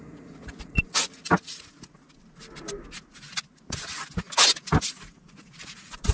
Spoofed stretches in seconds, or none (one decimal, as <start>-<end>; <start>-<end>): 0.0-1.2; 4.9-6.1

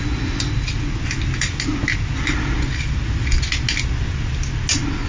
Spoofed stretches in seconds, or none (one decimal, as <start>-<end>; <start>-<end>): none

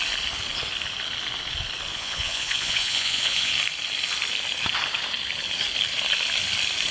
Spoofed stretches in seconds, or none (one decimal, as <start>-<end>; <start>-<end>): 1.9-3.5

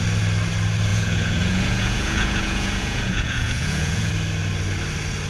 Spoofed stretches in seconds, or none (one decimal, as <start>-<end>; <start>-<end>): 0.9-4.1

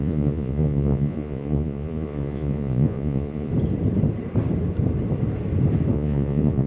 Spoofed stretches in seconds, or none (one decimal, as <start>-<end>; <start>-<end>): 0.0-3.5; 5.9-6.7